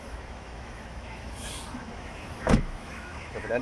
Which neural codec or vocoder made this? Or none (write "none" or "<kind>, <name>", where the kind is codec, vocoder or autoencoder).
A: autoencoder, DAC-VAE